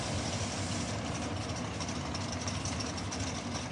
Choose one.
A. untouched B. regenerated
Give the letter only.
A